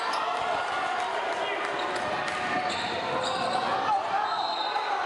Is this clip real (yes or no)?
yes